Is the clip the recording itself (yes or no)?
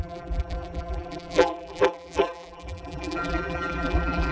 no